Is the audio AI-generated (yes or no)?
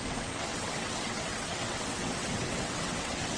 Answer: yes